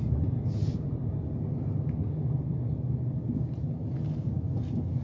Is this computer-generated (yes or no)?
no